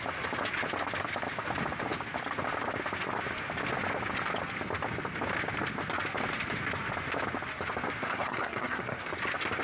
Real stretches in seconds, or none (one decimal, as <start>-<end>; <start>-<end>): 0.0-8.0; 9.1-9.6